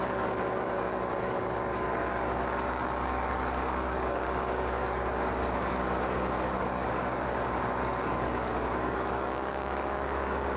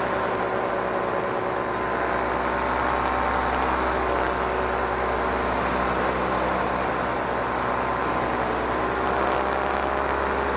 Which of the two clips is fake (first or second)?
first